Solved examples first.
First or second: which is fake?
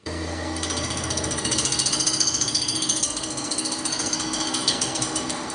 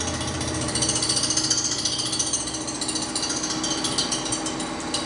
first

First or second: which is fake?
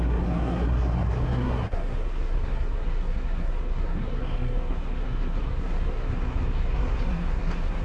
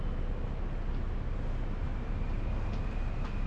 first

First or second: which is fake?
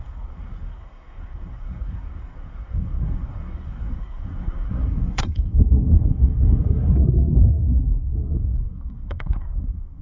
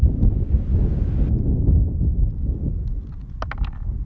first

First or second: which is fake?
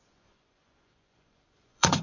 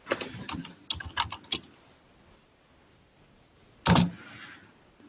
first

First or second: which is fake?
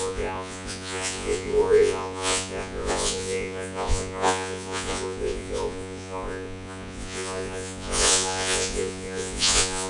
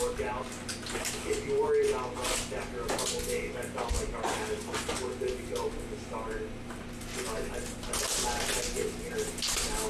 first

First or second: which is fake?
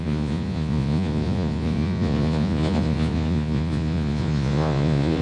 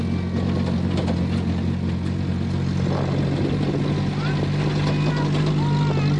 first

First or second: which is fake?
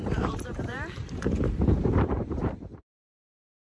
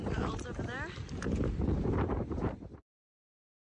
first